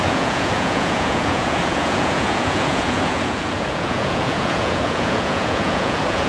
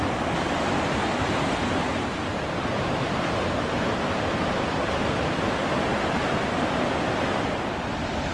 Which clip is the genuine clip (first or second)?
second